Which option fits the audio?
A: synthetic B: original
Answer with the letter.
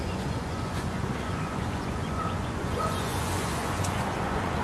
A